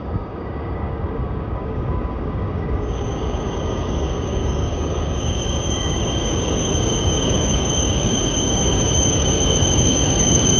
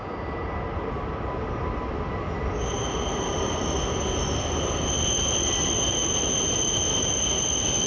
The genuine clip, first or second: second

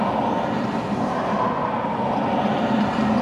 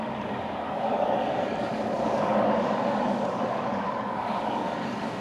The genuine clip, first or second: first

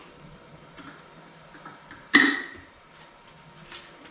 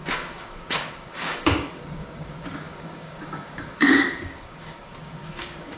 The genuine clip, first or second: first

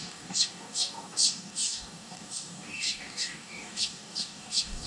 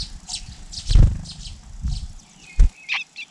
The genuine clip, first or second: second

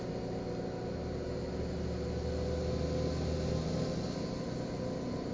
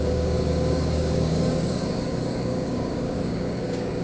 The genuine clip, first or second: first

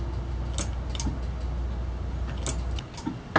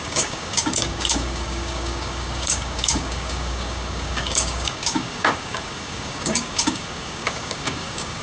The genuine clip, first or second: first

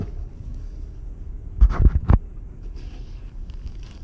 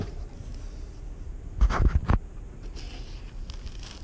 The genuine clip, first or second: second